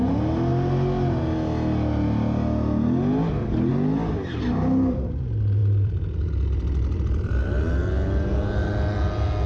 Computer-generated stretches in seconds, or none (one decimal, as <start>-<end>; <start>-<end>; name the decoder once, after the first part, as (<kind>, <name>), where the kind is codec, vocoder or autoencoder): 5.6-7.5 (vocoder, BigVGAN v2)